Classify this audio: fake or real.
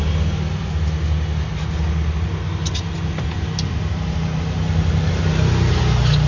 real